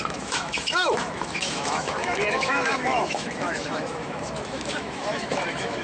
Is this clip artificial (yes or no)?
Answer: yes